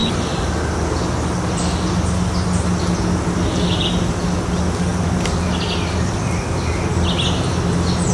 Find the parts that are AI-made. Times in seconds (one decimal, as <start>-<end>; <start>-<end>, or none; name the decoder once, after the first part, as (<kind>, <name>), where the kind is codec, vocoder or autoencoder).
none